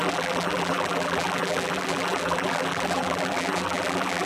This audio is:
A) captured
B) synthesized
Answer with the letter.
B